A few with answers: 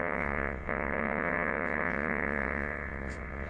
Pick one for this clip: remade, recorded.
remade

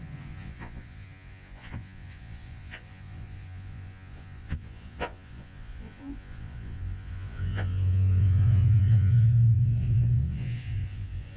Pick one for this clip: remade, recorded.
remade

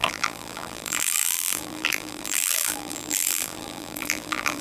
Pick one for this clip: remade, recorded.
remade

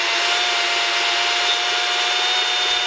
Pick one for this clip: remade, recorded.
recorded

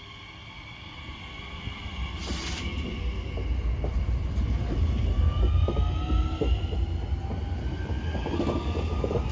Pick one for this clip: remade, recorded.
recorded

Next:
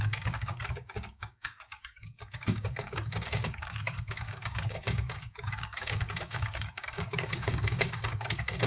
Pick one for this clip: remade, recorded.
remade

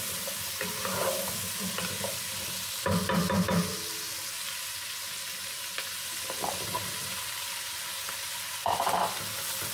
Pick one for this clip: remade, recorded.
recorded